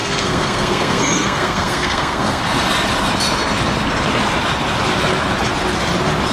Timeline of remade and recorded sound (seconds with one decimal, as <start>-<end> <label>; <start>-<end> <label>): 0.0-2.4 remade; 2.4-6.3 recorded